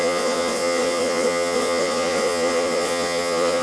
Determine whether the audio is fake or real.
fake